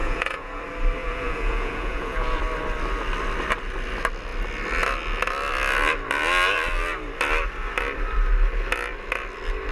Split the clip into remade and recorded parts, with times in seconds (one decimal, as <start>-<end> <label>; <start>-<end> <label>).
0.0-0.6 remade; 0.6-1.0 recorded; 1.0-2.4 remade; 2.4-9.7 recorded